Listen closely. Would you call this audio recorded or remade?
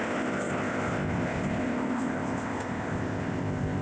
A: remade